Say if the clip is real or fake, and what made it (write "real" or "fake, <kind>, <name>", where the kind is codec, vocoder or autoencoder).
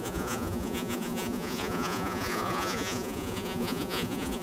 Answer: fake, vocoder, Vocos